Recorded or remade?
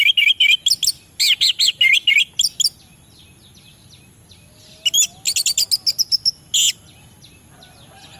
recorded